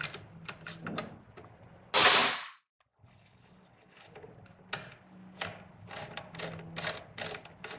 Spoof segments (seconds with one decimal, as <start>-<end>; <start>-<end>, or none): none